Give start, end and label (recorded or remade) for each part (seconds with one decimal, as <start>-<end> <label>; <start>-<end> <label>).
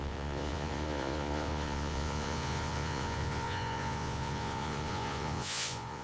0.0-6.0 remade